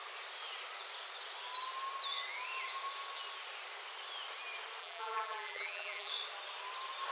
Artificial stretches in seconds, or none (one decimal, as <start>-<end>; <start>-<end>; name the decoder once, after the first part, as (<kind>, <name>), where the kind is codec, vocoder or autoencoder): 4.8-6.1 (vocoder, BigVGAN v2)